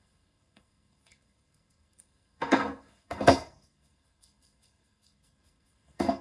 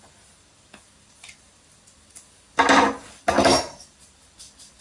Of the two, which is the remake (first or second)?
first